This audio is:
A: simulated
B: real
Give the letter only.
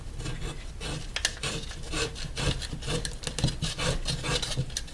B